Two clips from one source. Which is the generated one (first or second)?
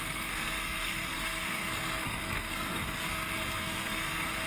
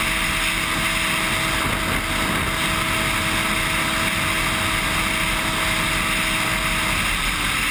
first